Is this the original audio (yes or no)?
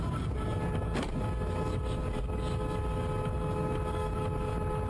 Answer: yes